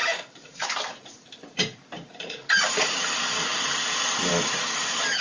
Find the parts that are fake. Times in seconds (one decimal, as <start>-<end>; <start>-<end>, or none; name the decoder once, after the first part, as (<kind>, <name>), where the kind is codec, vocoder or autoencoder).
0.0-3.1 (vocoder, BigVGAN v2)